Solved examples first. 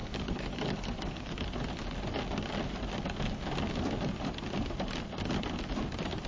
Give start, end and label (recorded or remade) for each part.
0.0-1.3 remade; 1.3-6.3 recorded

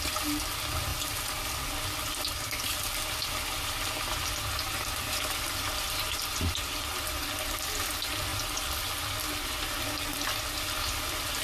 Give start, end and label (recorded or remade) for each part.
0.0-11.4 recorded